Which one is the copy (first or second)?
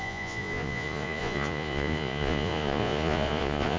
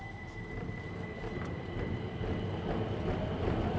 first